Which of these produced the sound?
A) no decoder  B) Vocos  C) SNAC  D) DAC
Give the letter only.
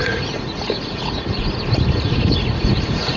B